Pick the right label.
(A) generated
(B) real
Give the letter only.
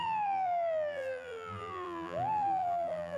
A